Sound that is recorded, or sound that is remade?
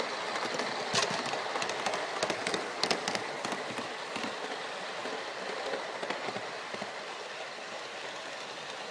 recorded